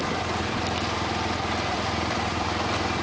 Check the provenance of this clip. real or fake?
fake